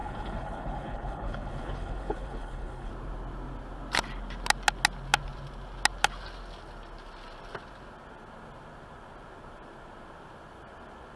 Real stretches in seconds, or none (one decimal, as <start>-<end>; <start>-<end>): 2.9-11.2